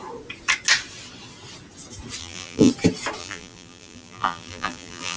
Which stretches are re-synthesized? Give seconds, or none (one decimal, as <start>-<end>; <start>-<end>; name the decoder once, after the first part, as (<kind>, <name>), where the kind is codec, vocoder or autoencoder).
2.2-2.7 (vocoder, BigVGAN v2); 3.2-5.2